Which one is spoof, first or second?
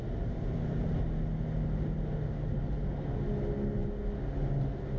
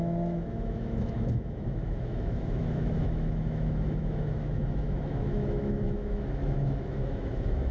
second